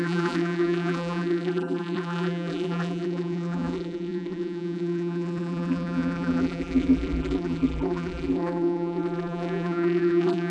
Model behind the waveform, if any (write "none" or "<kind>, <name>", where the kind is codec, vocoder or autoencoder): vocoder, BigVGAN v2